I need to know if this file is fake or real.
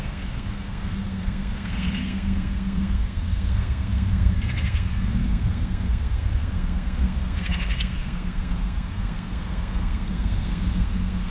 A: fake